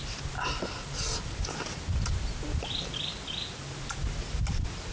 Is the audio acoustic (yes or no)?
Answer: yes